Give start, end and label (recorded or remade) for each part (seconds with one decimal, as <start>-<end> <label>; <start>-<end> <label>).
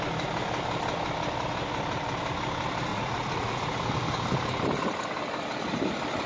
0.0-2.9 recorded; 2.9-3.6 remade; 3.6-6.3 recorded